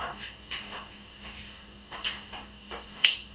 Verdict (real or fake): fake